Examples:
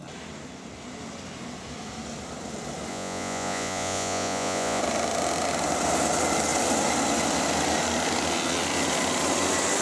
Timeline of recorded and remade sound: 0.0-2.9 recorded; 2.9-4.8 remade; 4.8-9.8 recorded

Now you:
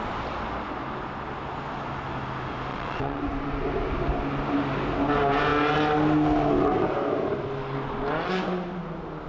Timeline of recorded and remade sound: 0.0-2.7 recorded; 2.7-3.2 remade; 3.2-9.3 recorded